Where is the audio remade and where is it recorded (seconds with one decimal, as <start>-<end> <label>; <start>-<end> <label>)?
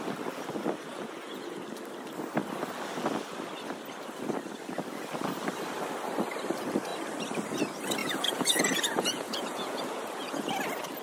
0.0-0.9 recorded; 0.9-1.6 remade; 1.6-8.0 recorded; 8.0-10.5 remade; 10.5-11.0 recorded